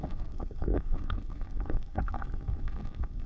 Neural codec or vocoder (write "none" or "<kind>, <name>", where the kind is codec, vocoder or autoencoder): codec, SNAC